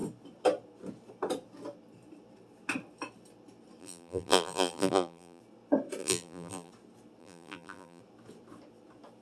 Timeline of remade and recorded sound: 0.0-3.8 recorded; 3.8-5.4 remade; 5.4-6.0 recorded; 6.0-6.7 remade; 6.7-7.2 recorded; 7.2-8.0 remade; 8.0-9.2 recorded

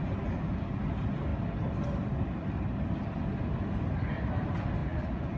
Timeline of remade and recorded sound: 0.0-0.8 remade; 0.8-4.8 recorded; 4.8-5.4 remade

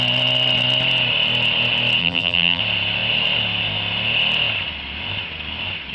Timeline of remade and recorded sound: 0.0-2.0 recorded; 2.0-2.6 remade; 2.6-5.9 recorded